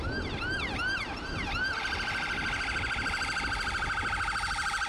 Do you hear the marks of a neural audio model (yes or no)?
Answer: no